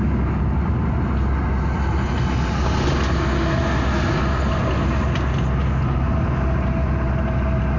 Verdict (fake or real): real